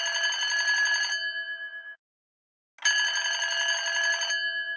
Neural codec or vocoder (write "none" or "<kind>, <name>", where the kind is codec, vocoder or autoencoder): none